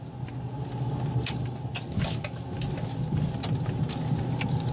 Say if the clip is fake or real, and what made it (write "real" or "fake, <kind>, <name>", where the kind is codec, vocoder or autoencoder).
real